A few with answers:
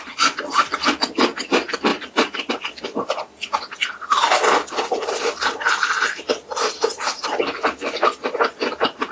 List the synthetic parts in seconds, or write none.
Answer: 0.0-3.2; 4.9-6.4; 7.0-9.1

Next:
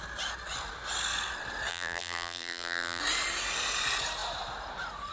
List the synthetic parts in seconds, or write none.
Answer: 1.7-3.0